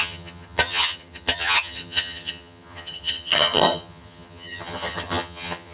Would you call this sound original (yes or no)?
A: no